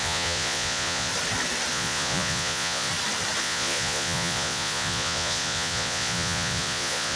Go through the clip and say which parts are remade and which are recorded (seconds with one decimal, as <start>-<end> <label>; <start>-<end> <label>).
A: 0.0-1.1 remade; 1.1-1.7 recorded; 1.7-2.9 remade; 2.9-3.4 recorded; 3.4-7.2 remade